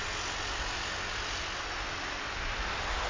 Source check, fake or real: real